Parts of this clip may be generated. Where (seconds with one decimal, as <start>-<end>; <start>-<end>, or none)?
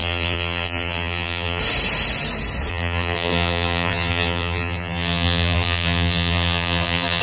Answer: 0.0-1.6; 2.7-7.2